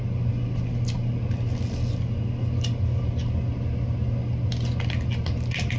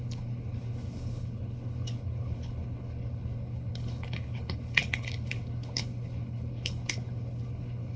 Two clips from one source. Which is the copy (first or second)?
second